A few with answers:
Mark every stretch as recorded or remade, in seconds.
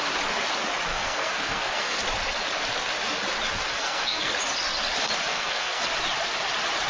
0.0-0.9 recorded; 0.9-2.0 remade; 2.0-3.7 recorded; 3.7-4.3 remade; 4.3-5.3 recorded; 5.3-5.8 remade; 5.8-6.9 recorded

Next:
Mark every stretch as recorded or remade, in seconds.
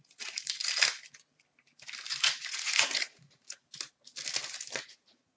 0.0-0.6 remade; 0.6-2.1 recorded; 2.1-3.6 remade; 3.6-4.8 recorded; 4.8-5.4 remade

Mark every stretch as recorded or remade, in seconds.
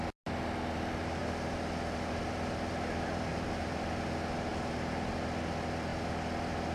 0.0-3.3 recorded; 3.3-3.9 remade; 3.9-4.5 recorded; 4.5-5.1 remade; 5.1-6.7 recorded